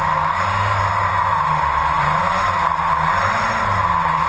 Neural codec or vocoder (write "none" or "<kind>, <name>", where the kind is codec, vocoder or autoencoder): none